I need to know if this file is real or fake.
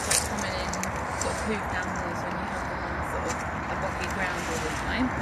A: real